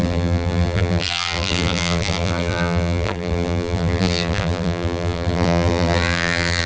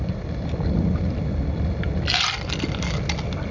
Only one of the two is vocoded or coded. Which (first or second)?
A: first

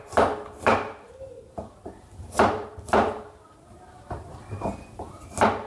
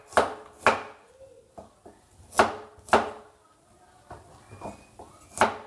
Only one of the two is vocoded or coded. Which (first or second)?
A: first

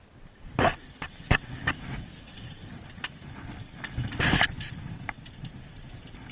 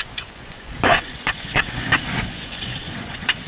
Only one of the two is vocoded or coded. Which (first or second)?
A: second